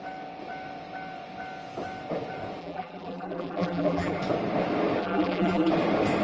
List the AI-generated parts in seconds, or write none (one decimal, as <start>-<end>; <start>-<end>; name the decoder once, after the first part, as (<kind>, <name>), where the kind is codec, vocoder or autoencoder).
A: 2.6-4.2 (vocoder, BigVGAN v2); 5.0-5.7